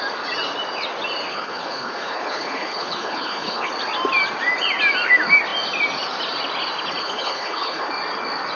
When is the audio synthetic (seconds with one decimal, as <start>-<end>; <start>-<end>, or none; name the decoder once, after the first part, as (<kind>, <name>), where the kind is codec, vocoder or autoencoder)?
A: 1.3-3.7 (codec, HILCodec); 7.0-7.9